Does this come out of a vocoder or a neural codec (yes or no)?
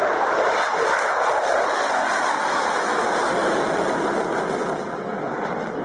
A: no